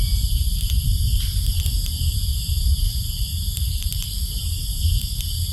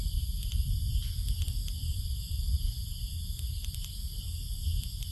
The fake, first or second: first